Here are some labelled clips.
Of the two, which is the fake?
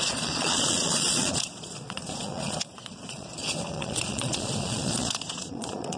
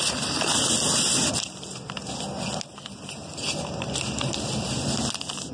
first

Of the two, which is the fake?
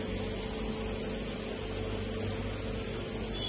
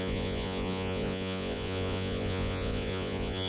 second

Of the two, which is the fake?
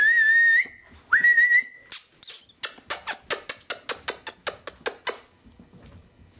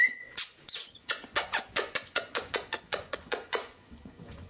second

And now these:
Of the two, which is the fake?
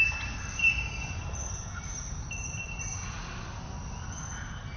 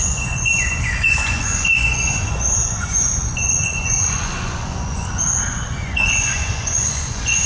second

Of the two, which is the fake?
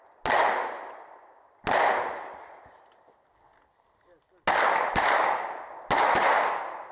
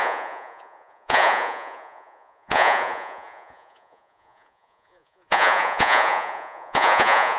second